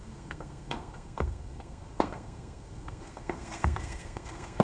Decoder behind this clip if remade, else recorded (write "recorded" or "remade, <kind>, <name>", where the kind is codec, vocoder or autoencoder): remade, codec, SNAC